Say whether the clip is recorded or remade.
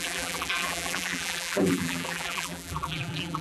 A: remade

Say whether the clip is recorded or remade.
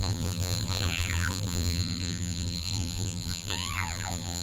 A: remade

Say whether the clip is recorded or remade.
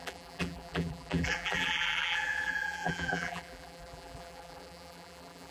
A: remade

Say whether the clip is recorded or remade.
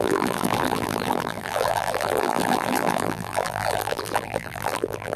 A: remade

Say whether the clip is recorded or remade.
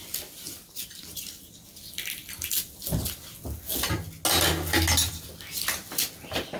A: recorded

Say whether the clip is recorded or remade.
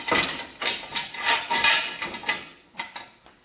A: remade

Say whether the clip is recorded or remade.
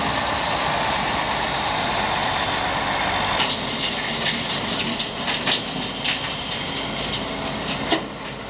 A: recorded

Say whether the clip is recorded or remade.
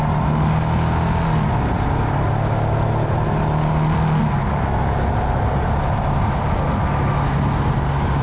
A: recorded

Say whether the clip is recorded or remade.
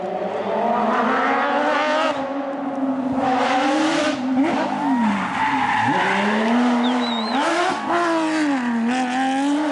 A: recorded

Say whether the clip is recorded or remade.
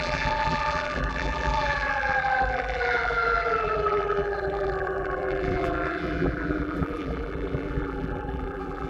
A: remade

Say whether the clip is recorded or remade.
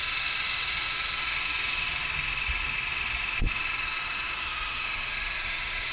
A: recorded